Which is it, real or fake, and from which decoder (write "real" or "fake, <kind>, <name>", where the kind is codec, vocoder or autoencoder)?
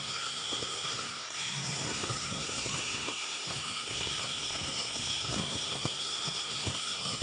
fake, codec, SNAC